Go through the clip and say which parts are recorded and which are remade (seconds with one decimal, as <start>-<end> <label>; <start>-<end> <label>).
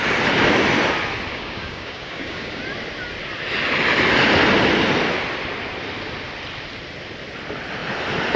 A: 0.0-1.3 recorded; 1.3-2.6 remade; 2.6-8.4 recorded